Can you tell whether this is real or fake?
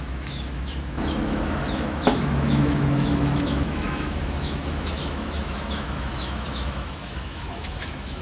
fake